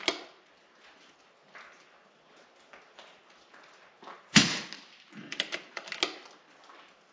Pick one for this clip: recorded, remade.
recorded